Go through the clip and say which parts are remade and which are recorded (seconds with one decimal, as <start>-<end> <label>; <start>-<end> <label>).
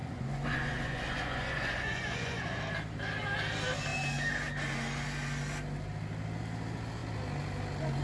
0.0-2.6 remade; 2.6-8.0 recorded